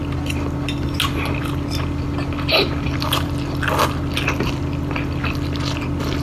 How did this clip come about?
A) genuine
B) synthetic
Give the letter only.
A